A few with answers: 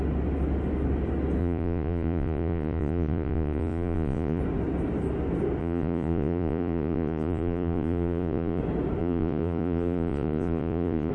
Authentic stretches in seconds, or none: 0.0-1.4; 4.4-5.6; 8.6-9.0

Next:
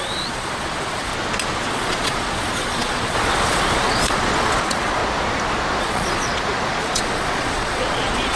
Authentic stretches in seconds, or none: 1.1-1.7; 5.0-5.8; 6.3-6.8